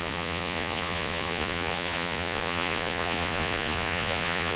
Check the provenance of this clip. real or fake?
fake